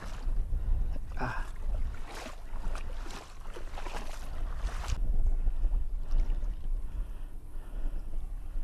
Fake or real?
real